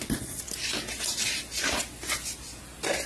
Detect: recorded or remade recorded